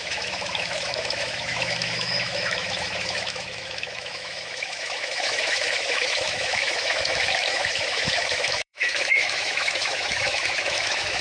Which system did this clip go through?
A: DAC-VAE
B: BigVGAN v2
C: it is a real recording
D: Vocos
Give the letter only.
A